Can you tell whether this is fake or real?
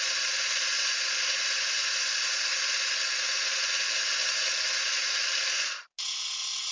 real